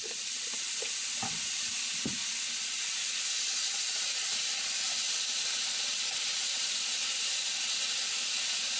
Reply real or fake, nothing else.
real